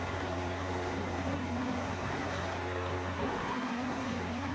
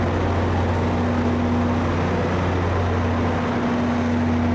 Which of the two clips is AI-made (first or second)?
first